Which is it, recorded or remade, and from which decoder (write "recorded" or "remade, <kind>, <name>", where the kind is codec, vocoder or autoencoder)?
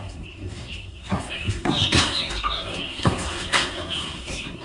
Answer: remade, codec, SNAC